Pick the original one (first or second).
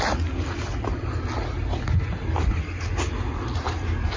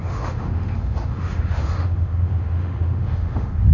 first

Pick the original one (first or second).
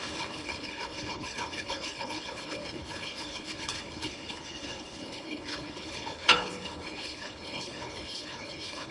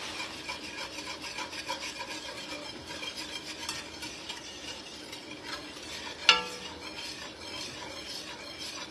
second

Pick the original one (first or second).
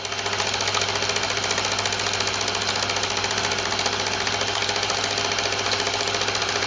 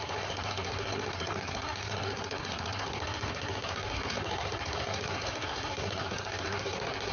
first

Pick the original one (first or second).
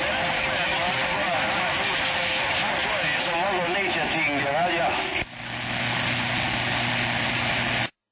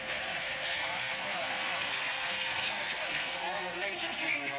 first